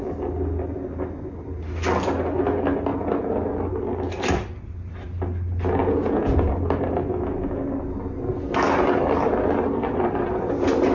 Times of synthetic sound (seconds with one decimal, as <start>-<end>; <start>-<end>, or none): 5.8-6.4